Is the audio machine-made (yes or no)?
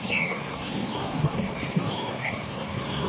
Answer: yes